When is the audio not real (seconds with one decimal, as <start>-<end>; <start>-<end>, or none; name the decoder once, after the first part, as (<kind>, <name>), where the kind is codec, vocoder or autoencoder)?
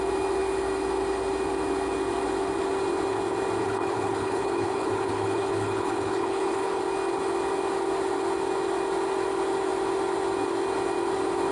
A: 3.6-6.8 (codec, HILCodec)